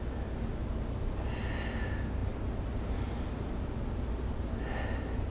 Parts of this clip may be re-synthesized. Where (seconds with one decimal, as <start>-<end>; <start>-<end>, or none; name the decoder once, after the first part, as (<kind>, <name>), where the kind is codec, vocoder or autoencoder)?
none